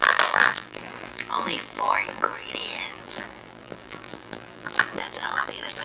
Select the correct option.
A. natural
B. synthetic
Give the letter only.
B